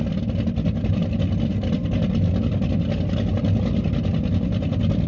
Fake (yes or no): no